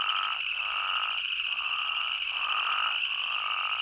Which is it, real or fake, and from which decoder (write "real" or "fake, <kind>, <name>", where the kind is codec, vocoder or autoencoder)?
real